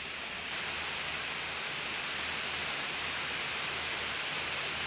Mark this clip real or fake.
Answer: real